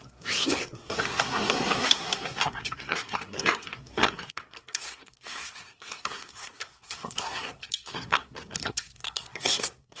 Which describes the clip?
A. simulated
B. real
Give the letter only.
A